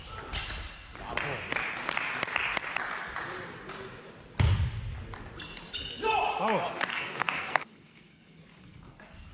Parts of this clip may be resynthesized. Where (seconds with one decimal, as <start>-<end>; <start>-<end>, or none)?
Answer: 6.9-9.3